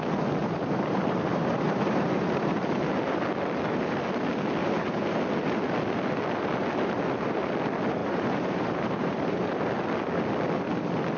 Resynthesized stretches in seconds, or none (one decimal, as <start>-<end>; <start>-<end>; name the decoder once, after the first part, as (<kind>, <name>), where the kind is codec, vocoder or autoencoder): 0.4-2.5 (vocoder, BigVGAN v2); 4.6-5.2; 8.0-9.5